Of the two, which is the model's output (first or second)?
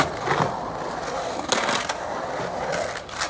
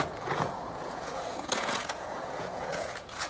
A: second